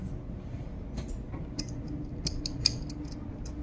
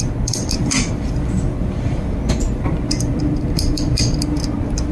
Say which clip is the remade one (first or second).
second